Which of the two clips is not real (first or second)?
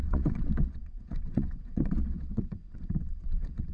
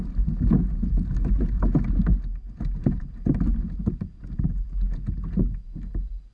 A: first